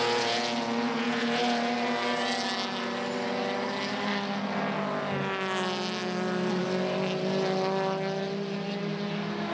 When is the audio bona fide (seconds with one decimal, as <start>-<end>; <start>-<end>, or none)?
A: 0.0-9.5